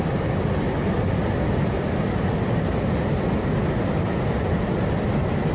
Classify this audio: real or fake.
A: real